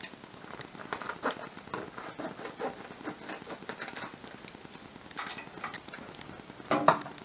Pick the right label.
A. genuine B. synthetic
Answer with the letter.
A